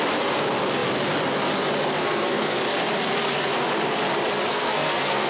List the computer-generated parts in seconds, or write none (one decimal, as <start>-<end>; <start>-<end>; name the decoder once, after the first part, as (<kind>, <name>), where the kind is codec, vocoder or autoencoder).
2.0-2.6 (codec, SNAC); 4.5-5.3